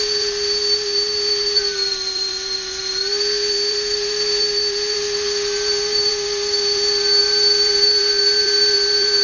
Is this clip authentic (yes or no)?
no